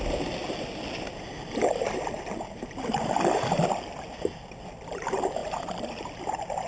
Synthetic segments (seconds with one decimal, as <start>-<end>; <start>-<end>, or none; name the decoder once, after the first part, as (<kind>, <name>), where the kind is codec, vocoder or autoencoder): none